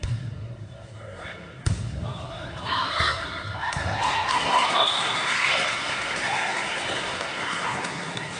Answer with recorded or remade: remade